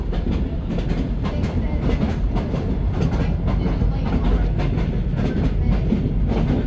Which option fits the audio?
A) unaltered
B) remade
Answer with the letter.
A